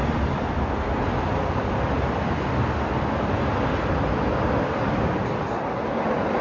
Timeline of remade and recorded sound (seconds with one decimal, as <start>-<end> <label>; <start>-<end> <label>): 0.0-6.4 recorded